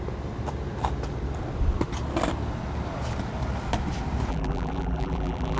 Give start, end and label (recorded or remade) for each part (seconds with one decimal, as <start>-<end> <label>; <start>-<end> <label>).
0.0-4.3 recorded; 4.3-5.6 remade